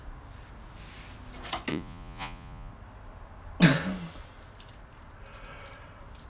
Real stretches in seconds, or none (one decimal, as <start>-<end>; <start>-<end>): 0.0-1.7; 2.7-6.3